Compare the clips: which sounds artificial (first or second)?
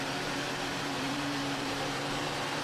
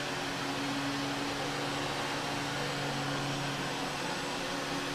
first